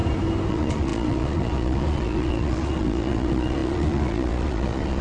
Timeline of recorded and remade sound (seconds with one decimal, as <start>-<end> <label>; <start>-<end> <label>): 0.0-0.5 recorded; 0.5-5.0 remade